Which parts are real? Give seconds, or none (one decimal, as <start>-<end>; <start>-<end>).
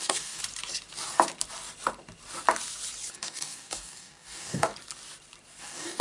0.4-3.1; 4.7-5.6